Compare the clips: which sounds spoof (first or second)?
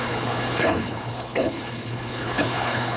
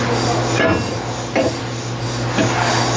first